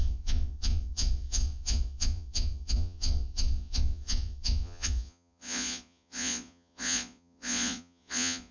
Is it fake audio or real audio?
fake